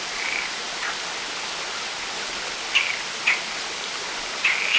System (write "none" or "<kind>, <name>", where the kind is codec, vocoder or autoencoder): none